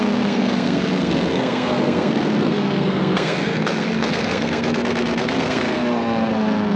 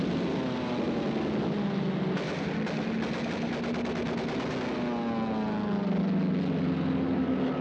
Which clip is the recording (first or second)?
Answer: second